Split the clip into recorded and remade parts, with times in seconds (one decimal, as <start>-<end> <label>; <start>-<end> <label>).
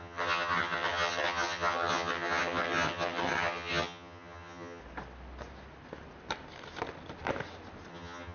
0.0-4.8 remade; 4.8-7.9 recorded; 7.9-8.3 remade